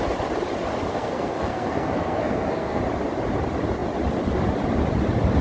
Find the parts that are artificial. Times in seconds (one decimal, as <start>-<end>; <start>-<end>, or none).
0.9-2.8